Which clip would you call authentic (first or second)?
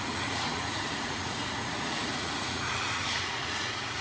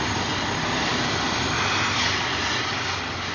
second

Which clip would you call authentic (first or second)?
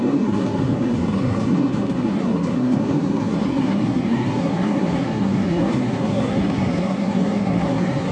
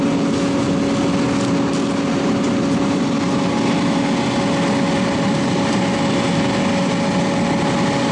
second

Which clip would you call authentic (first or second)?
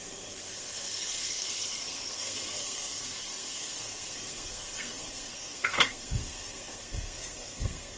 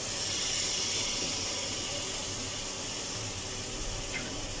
second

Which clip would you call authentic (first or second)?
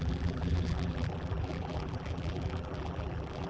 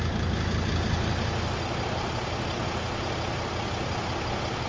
second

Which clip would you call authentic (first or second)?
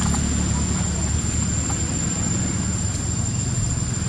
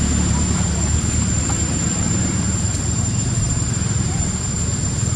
first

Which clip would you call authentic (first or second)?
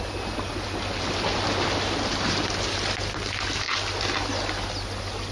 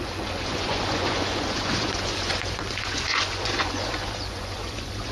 first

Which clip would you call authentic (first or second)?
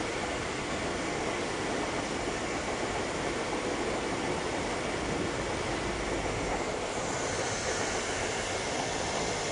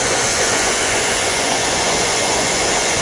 first